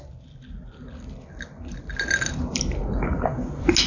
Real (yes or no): yes